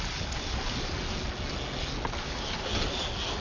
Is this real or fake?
real